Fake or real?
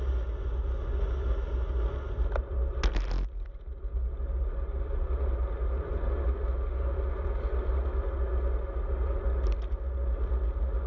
real